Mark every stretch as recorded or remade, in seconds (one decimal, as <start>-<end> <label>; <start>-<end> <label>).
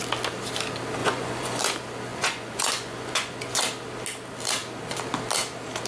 0.0-1.0 recorded; 1.0-1.6 remade; 1.6-2.1 recorded; 2.1-3.6 remade; 3.6-5.9 recorded